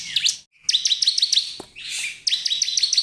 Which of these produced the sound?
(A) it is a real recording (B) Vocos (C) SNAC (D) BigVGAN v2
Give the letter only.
A